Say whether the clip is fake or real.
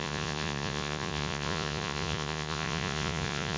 fake